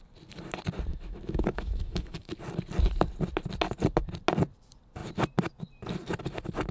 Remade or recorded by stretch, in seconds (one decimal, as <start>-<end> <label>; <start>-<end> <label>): 0.0-0.9 recorded; 0.9-2.3 remade; 2.3-6.7 recorded